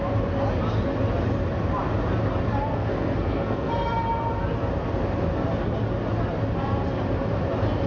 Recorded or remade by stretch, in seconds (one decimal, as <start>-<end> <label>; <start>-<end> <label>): 0.0-2.7 recorded; 2.7-3.7 remade; 3.7-7.9 recorded